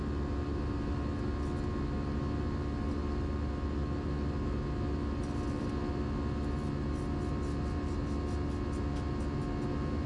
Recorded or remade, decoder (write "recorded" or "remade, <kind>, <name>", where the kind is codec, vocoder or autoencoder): recorded